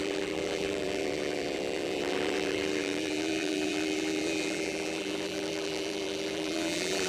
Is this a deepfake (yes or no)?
yes